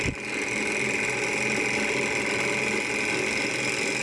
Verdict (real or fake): real